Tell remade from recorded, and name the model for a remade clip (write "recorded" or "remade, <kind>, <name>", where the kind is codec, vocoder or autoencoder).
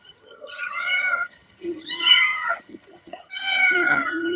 remade, vocoder, HiFi-GAN